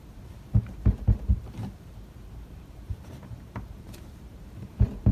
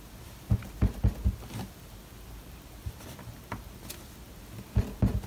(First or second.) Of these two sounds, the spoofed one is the first